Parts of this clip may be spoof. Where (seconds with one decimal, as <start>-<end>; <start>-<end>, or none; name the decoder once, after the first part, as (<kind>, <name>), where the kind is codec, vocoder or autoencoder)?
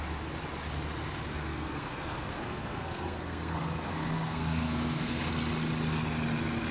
1.3-5.3 (codec, SNAC)